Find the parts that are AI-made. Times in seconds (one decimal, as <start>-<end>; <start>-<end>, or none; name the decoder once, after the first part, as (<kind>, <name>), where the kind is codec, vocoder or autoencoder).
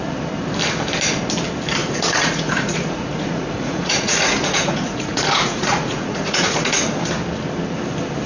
1.8-6.8 (vocoder, Vocos)